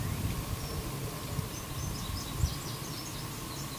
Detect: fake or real real